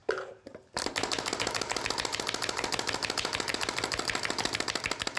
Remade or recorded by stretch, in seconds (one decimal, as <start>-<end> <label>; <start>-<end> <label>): 0.0-5.2 recorded